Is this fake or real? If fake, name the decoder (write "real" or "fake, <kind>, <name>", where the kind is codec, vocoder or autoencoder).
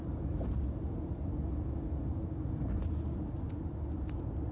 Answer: real